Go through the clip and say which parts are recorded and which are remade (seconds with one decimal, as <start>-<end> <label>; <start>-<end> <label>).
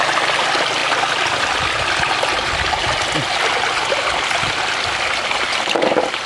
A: 0.0-6.3 recorded